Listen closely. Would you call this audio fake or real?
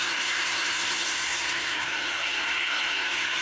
fake